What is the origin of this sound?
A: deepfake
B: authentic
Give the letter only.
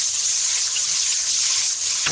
A